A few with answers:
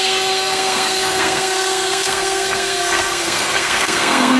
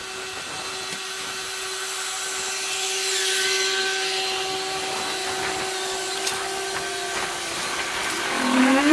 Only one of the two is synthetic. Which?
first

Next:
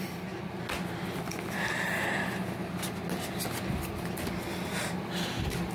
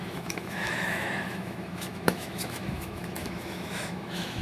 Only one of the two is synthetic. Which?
second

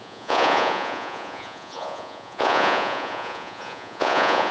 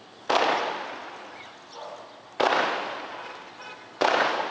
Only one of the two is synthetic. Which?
first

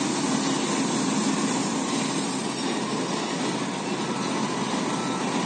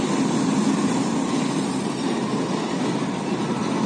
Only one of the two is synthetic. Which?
second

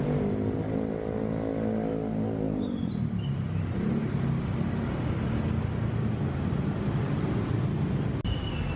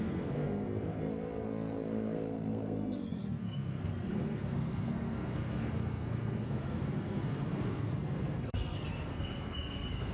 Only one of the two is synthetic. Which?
second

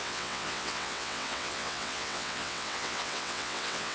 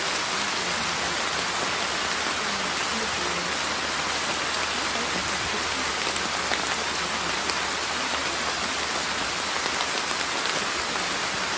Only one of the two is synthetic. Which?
first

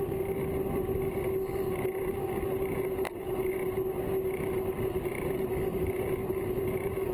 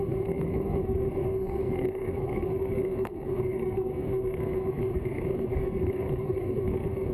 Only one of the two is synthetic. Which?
second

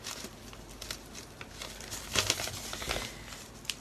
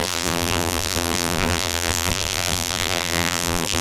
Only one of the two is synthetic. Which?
second